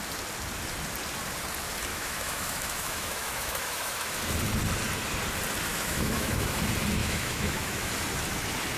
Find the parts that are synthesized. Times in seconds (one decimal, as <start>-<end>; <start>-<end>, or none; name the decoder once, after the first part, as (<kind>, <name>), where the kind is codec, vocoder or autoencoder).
1.9-4.2 (autoencoder, DAC-VAE); 5.7-6.6; 7.0-7.9